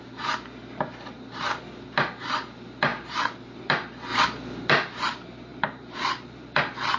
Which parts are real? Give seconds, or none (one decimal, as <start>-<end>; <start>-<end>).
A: 0.0-2.9; 3.6-5.5; 6.6-7.0